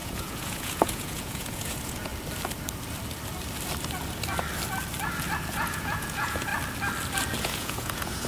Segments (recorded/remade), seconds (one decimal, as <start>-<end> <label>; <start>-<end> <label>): 0.0-2.1 remade; 2.1-5.5 recorded; 5.5-6.5 remade; 6.5-7.4 recorded; 7.4-8.3 remade